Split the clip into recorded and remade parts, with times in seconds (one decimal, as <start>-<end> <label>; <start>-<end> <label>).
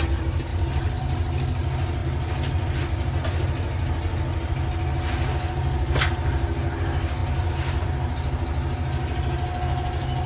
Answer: 0.0-10.3 recorded